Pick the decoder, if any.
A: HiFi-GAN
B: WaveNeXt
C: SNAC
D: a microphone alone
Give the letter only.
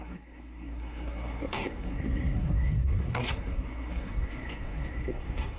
C